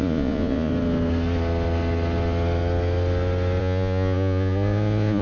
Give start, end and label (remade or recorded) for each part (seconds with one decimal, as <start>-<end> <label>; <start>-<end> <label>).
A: 0.0-0.7 remade; 0.7-3.6 recorded; 3.6-5.2 remade